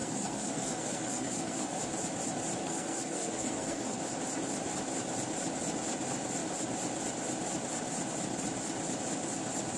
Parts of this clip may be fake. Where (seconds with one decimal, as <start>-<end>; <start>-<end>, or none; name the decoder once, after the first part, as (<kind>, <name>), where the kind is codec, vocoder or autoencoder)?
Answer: 0.0-1.8 (codec, SNAC); 2.6-4.0